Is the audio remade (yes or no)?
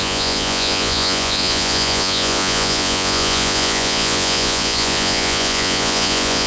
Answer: yes